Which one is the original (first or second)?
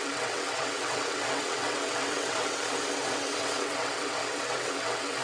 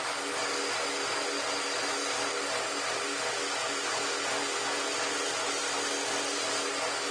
second